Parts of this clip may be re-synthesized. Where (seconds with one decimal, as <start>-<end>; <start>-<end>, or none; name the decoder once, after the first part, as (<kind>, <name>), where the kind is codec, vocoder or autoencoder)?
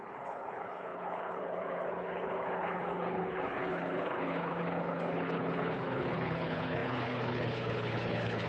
0.0-8.5 (codec, HILCodec)